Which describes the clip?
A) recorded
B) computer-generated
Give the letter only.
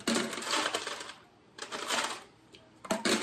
B